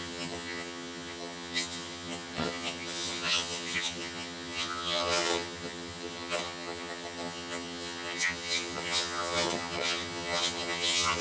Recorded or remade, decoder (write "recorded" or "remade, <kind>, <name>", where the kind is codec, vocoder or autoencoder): remade, vocoder, HiFi-GAN